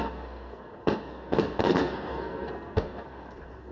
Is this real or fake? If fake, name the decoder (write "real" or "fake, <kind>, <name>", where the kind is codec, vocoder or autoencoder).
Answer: fake, codec, SNAC